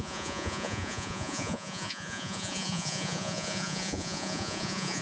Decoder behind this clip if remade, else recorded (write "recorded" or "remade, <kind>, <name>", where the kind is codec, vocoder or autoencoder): remade, vocoder, Vocos